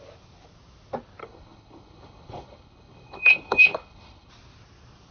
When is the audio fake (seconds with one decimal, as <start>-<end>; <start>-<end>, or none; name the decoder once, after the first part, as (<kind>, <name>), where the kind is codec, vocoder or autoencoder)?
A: 1.2-4.3 (codec, HILCodec)